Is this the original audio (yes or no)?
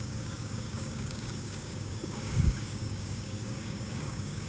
no